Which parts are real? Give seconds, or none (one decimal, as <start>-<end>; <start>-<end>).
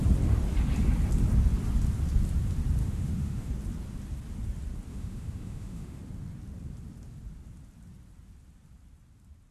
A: 0.0-2.8; 3.5-4.9; 6.0-9.5